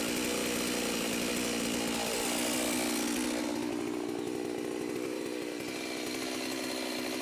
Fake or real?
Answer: real